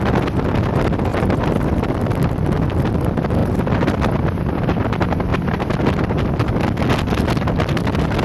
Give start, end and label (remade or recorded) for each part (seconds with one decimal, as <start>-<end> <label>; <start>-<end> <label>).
0.0-1.1 recorded; 1.1-2.8 remade; 2.8-5.3 recorded; 5.3-6.2 remade; 6.2-8.2 recorded